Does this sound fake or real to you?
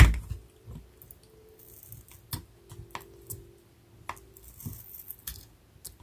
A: real